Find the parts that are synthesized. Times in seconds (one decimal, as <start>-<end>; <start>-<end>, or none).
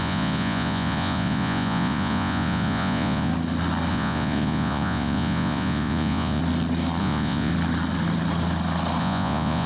0.0-3.3; 3.9-6.4; 7.0-7.5; 9.0-9.7